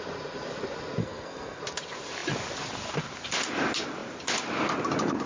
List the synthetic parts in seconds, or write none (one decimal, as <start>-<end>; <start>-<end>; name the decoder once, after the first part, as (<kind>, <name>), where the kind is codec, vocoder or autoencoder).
1.0-1.6 (codec, SNAC)